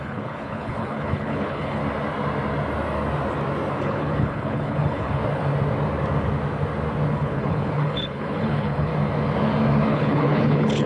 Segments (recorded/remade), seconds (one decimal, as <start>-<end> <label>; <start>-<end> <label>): 0.0-1.8 remade; 1.8-3.7 recorded; 3.7-5.2 remade; 5.2-7.1 recorded; 7.1-8.9 remade; 8.9-9.9 recorded; 9.9-10.9 remade